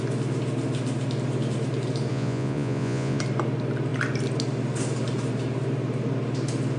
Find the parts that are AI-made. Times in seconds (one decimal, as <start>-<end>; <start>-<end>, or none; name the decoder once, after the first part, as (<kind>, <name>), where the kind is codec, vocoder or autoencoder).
2.1-3.2 (vocoder, Vocos)